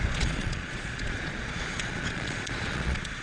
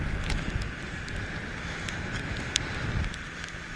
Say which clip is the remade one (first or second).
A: first